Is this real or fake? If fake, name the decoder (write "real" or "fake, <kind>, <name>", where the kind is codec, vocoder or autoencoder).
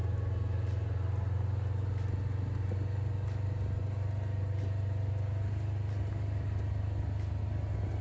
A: real